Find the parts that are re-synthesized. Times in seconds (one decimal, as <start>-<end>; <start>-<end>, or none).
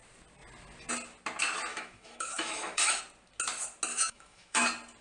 1.7-3.0; 3.9-4.6